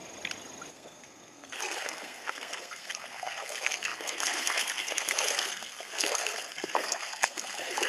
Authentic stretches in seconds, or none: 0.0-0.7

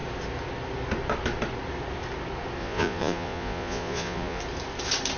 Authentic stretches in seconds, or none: 0.0-2.6; 4.4-5.2